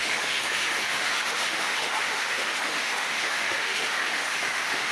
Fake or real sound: fake